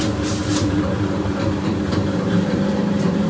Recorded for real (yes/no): no